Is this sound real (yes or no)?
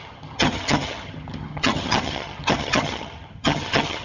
no